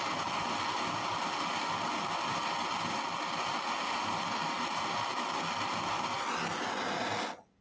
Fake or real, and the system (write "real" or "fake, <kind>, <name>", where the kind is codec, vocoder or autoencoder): real